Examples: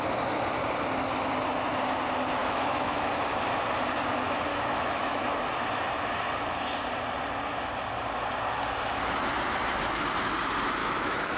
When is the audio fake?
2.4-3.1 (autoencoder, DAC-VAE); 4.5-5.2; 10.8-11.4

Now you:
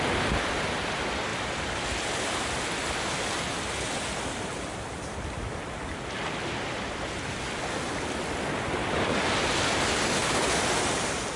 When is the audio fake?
none

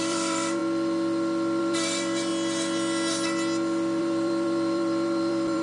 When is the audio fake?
0.0-0.6 (vocoder, BigVGAN v2); 1.6-2.3; 4.0-5.6

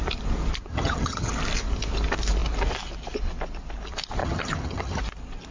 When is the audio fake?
0.7-1.3 (vocoder, HiFi-GAN); 4.2-5.0

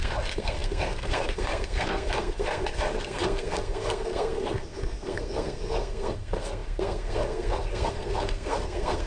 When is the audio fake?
0.0-9.1 (codec, SNAC)

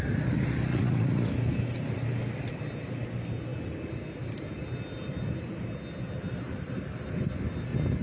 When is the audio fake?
0.7-1.3 (vocoder, Vocos)

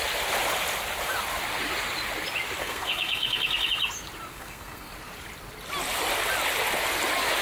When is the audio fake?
2.6-3.7 (codec, SNAC); 4.3-4.9

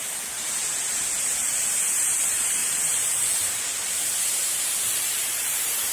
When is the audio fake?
0.0-5.9 (vocoder, BigVGAN v2)